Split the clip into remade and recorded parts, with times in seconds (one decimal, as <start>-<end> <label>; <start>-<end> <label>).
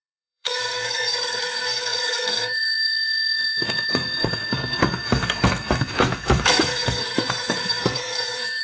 0.0-8.6 remade